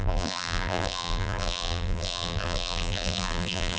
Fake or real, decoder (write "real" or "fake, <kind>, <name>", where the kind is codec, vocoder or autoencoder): fake, vocoder, BigVGAN v2